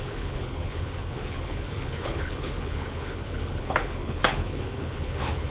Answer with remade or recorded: remade